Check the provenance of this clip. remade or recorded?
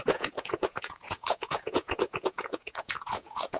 remade